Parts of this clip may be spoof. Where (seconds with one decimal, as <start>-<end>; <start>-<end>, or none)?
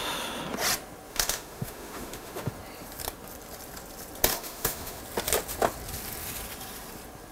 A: 1.1-2.5; 4.3-5.0